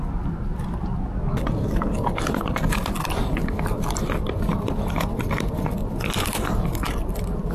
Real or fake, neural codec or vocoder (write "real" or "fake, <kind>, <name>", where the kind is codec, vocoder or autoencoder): fake, vocoder, BigVGAN v2